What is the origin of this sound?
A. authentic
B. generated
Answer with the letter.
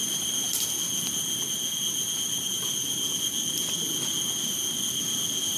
A